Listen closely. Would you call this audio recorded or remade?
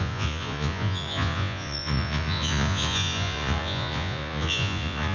remade